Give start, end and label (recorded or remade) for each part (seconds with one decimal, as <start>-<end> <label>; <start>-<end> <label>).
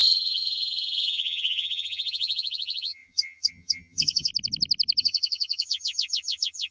0.0-4.3 remade; 4.3-5.0 recorded; 5.0-6.7 remade